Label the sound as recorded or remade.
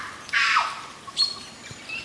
recorded